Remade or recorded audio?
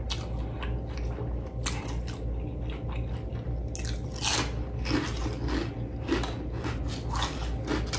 recorded